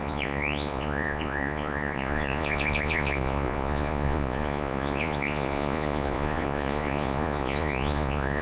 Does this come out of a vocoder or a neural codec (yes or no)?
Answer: yes